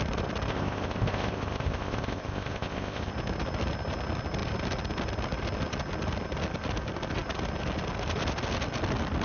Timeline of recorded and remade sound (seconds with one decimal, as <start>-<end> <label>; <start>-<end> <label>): 0.0-0.5 recorded; 0.5-3.1 remade; 3.1-9.2 recorded